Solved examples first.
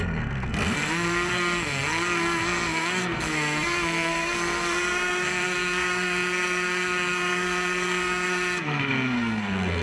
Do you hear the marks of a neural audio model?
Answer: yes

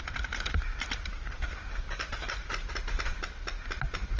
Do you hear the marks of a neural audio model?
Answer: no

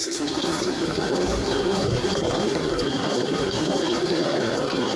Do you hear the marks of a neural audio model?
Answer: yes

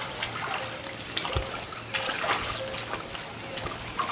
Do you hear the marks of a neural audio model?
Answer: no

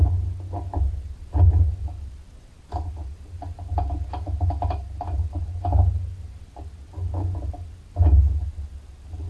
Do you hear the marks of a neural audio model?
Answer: no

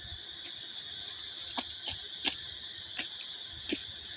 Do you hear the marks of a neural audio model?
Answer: no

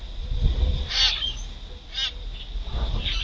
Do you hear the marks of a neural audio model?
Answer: no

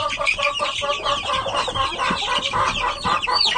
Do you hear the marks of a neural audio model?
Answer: no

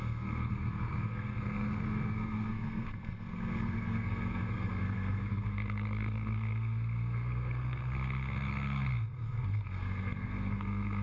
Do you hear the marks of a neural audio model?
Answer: yes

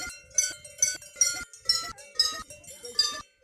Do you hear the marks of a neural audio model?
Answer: no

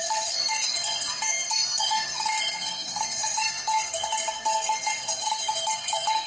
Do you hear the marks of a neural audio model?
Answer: yes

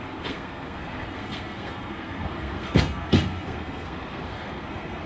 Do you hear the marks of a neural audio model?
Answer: yes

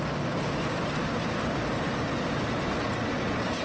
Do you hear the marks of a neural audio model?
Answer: no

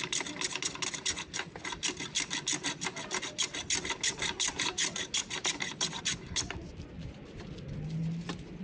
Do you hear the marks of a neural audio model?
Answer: no